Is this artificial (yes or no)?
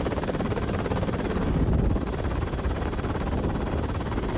yes